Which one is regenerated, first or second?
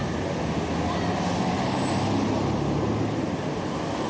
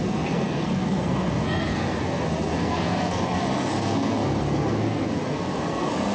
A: second